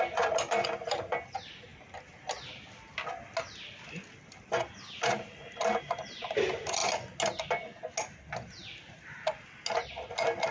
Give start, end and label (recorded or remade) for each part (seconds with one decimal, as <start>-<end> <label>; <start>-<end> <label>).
0.0-10.5 recorded